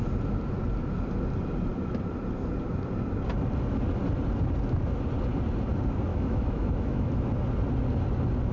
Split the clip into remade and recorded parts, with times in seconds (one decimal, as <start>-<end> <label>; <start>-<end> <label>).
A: 0.0-6.1 recorded; 6.1-7.2 remade; 7.2-8.5 recorded